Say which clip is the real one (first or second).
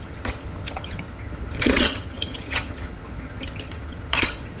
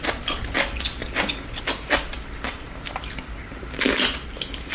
second